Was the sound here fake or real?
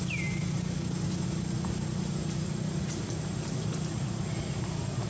real